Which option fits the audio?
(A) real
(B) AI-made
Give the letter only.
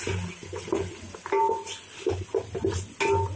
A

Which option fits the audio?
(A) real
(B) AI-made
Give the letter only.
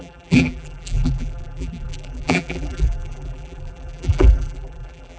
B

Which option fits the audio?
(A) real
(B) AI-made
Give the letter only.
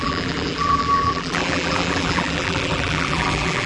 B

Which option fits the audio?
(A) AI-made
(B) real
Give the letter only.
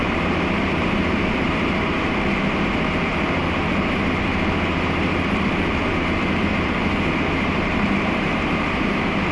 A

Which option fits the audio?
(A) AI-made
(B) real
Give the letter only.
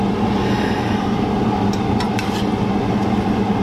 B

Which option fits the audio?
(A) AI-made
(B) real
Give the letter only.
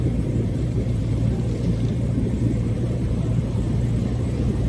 A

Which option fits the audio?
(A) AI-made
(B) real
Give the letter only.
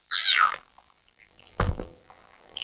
A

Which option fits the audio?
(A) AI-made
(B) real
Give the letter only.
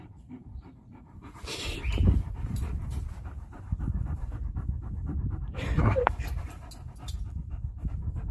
A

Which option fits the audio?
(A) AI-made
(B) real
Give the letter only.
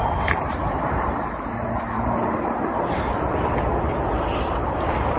A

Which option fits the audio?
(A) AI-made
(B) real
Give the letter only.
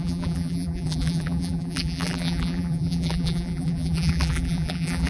A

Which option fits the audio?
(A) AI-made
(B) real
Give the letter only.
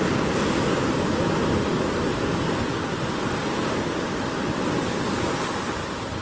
B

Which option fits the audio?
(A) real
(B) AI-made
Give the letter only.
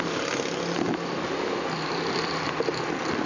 A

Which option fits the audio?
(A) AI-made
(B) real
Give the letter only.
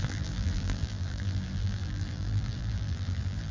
A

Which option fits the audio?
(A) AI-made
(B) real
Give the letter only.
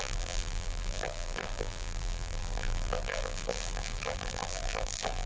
A